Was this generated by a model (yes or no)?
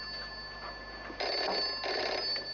no